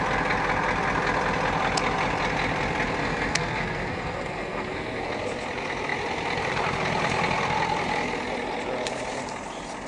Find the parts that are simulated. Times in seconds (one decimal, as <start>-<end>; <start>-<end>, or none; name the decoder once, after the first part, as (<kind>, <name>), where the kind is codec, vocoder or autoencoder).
3.0-5.1 (codec, SNAC)